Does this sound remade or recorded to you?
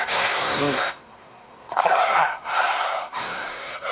remade